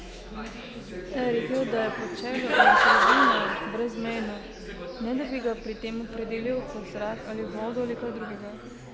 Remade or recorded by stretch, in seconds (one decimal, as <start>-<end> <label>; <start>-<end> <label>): 0.0-0.9 remade; 0.9-2.7 recorded; 2.7-3.5 remade; 3.5-8.9 recorded